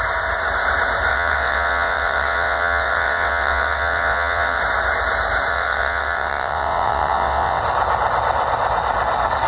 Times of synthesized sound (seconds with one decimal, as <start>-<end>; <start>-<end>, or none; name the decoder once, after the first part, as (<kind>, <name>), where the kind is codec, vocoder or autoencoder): 1.1-4.6 (vocoder, WaveNeXt); 5.5-7.6